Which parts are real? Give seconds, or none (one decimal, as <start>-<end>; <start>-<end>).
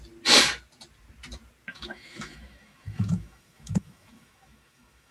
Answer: 0.0-1.7